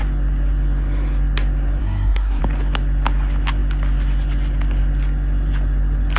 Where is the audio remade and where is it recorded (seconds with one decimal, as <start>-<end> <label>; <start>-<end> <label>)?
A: 0.0-1.8 recorded; 1.8-2.4 remade; 2.4-6.2 recorded